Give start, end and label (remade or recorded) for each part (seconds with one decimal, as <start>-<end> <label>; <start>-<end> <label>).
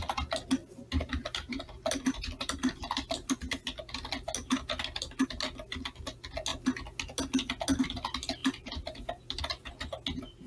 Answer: 0.0-0.6 recorded; 0.6-3.9 remade; 3.9-8.4 recorded; 8.4-9.4 remade; 9.4-10.5 recorded